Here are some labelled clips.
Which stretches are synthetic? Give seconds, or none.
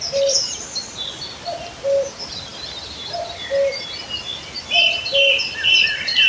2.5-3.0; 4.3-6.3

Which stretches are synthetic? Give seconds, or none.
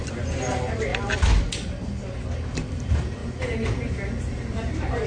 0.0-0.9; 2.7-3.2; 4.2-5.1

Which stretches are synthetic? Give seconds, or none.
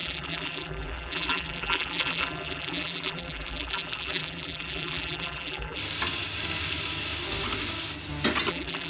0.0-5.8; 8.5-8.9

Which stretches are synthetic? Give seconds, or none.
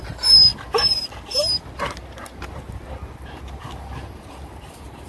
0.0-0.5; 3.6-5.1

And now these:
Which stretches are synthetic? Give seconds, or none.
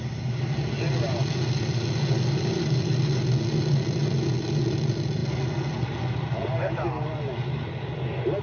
none